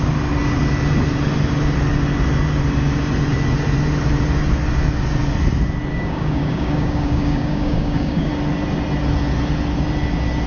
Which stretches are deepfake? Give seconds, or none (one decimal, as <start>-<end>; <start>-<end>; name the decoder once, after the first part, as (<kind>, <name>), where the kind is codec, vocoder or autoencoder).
5.9-8.3 (codec, DAC)